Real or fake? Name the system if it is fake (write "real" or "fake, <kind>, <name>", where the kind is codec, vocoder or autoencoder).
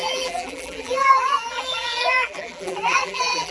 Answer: fake, vocoder, BigVGAN v2